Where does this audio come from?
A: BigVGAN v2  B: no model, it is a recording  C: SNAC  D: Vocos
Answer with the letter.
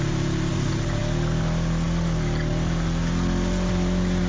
B